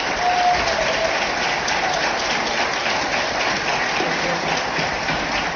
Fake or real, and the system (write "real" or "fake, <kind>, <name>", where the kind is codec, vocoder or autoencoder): real